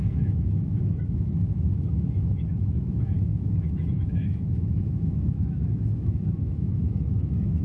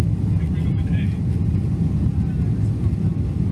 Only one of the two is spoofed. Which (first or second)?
first